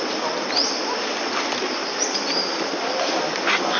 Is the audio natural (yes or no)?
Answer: yes